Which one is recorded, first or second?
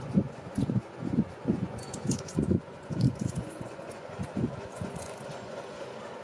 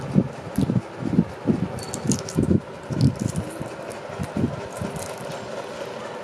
second